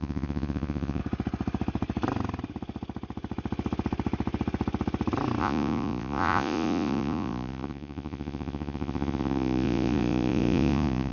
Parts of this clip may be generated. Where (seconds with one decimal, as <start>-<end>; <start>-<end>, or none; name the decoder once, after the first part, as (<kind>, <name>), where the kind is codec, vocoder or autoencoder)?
0.0-1.0 (vocoder, Vocos); 5.4-11.1